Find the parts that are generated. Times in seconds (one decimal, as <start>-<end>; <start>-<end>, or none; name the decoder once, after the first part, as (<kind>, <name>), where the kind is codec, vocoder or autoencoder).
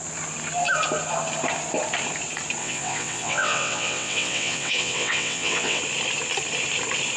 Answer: 2.6-5.8 (vocoder, WaveNeXt)